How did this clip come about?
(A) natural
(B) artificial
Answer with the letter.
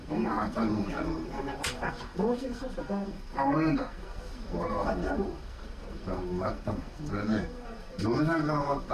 B